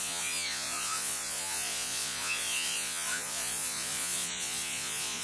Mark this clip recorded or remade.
remade